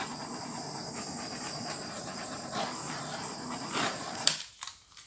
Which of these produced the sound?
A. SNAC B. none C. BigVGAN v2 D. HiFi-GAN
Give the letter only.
C